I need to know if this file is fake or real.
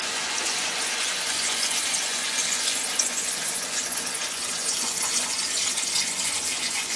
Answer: fake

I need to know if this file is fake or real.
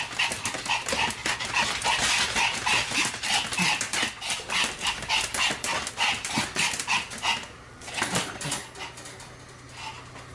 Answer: real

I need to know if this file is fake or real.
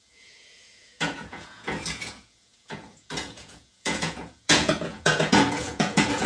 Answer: fake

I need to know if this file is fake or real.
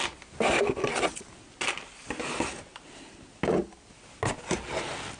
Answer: real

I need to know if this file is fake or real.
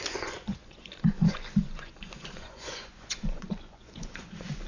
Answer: fake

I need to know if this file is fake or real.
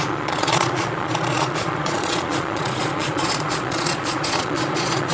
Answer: fake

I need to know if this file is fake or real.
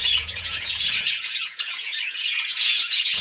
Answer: fake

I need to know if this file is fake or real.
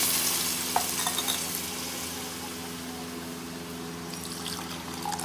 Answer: real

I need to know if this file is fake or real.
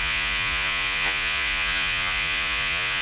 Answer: fake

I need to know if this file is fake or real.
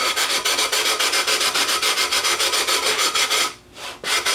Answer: real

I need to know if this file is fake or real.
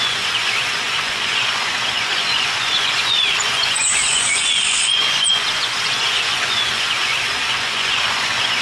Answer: fake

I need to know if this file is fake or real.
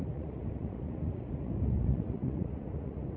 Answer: fake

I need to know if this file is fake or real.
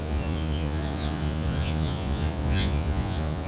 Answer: fake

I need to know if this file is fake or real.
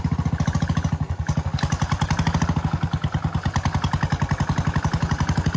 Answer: real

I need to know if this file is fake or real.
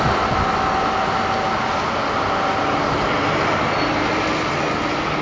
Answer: real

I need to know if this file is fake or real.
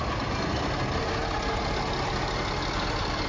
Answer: real